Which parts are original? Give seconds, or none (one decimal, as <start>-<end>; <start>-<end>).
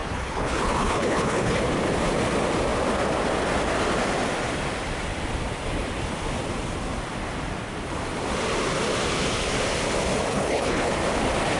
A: 1.6-10.3; 10.9-11.6